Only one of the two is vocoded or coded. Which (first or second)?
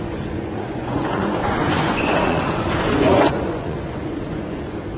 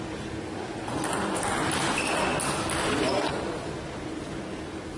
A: first